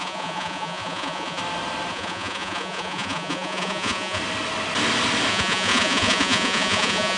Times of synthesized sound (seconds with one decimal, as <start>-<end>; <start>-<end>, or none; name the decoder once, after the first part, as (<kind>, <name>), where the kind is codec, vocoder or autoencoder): 0.0-1.4 (vocoder, Vocos); 1.9-4.2; 5.3-7.2